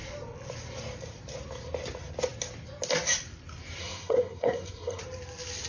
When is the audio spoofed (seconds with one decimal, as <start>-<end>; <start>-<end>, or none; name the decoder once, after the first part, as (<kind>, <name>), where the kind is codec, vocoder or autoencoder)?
3.8-5.0 (codec, SNAC)